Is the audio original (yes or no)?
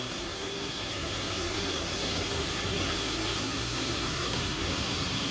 no